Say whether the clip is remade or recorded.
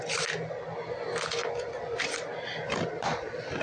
recorded